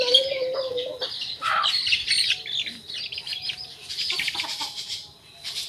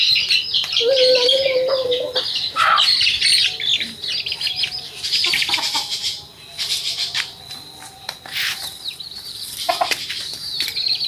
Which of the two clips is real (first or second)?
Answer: second